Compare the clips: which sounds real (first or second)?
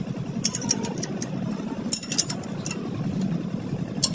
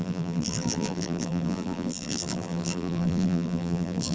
first